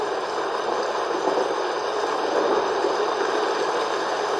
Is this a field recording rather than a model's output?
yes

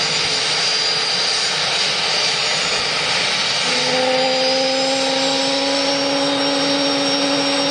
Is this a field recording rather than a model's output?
yes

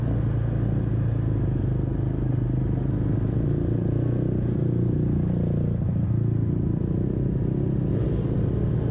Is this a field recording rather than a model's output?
yes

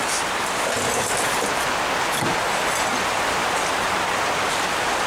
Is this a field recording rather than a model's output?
no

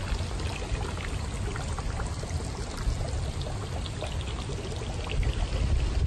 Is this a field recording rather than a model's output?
yes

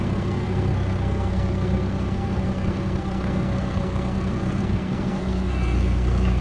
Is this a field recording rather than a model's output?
no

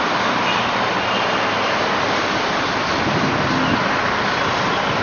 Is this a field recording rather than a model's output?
yes